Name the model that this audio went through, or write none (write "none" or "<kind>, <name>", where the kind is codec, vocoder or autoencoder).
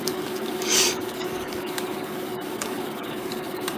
codec, DAC